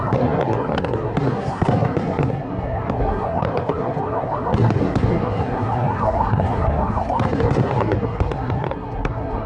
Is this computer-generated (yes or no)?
yes